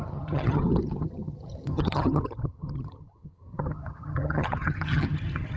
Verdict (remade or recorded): remade